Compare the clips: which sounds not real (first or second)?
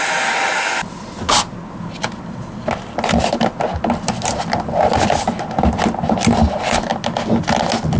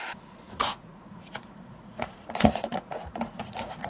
second